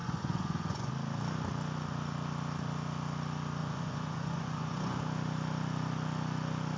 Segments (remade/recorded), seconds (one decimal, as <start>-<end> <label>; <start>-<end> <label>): 0.0-0.9 remade; 0.9-3.6 recorded; 3.6-5.0 remade; 5.0-6.8 recorded